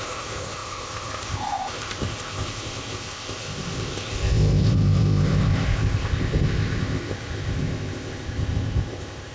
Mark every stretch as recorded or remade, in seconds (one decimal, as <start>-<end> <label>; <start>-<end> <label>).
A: 0.0-9.3 remade